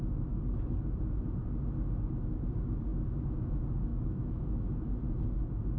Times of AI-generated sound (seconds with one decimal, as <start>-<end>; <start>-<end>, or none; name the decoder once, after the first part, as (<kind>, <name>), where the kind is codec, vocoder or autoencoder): 2.9-3.5 (autoencoder, DAC-VAE); 3.9-4.7